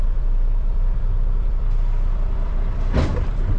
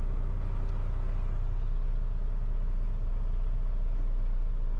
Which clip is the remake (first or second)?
first